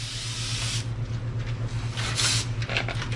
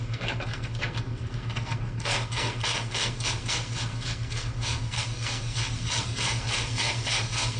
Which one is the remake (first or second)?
second